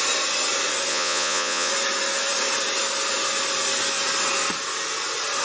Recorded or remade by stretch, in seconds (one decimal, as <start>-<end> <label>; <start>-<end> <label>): 0.0-0.9 recorded; 0.9-1.7 remade; 1.7-5.4 recorded